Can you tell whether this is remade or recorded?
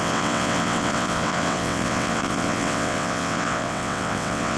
remade